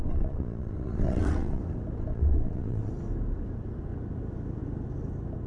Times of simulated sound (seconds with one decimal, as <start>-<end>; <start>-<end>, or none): 0.0-1.6; 2.1-2.9